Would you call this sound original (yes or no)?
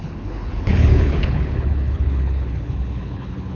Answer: no